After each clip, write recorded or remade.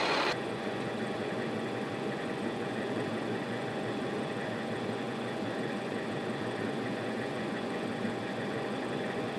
remade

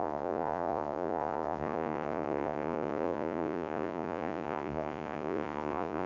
remade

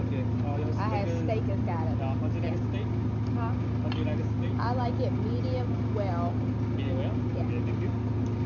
recorded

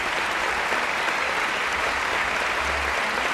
recorded